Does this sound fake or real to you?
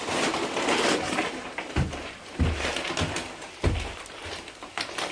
real